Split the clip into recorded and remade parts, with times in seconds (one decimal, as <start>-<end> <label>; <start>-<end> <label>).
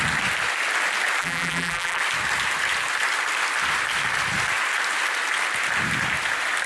0.0-1.2 recorded; 1.2-2.0 remade; 2.0-6.7 recorded